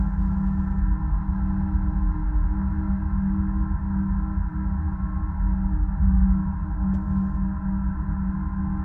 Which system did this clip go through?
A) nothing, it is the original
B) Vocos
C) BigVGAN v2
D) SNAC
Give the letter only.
A